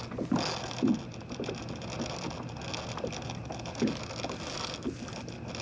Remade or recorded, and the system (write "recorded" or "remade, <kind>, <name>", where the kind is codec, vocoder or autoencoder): recorded